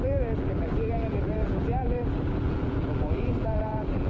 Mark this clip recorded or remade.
remade